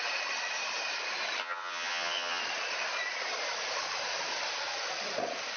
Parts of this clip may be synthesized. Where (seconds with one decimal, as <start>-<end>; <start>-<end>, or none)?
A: 1.4-2.4